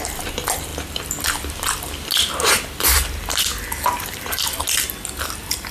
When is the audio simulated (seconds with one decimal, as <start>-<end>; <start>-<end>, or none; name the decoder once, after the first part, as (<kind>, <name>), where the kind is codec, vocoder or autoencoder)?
none